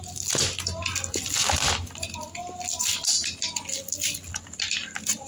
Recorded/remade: recorded